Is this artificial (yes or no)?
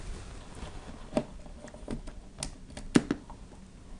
no